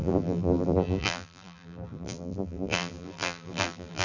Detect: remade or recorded remade